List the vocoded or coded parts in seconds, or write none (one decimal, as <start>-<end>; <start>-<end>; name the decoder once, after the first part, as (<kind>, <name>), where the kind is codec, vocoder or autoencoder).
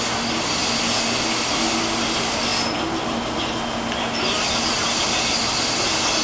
none